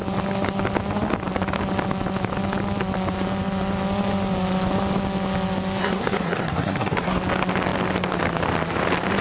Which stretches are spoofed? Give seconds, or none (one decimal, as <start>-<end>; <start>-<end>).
5.8-7.2